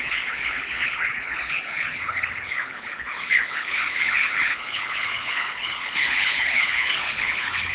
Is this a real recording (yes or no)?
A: no